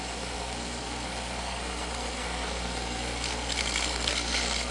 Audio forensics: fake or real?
fake